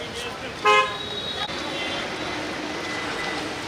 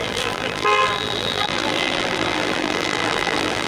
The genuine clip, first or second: first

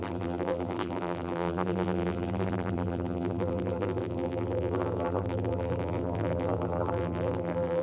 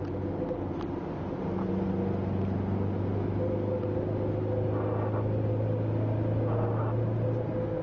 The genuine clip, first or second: second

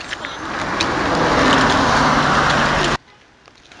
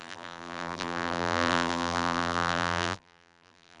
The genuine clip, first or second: first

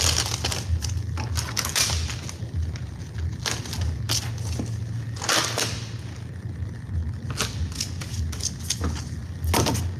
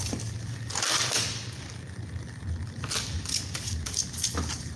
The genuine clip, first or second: first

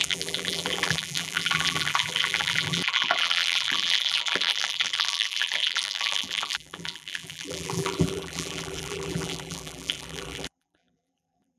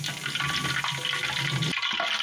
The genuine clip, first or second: second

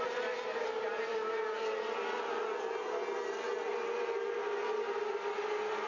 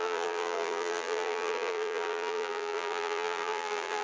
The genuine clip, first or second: first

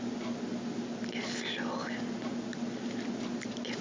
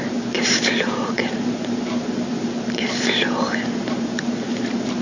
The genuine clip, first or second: first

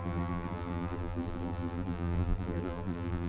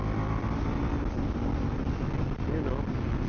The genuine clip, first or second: second